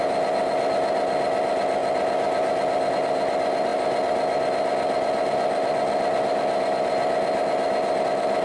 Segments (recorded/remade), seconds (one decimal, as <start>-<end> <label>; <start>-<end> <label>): 0.0-8.4 recorded